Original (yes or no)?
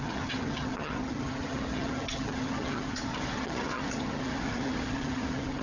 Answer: no